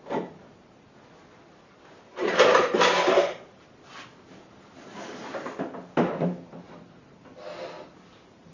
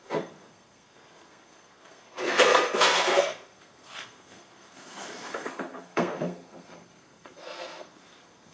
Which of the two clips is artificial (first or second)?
second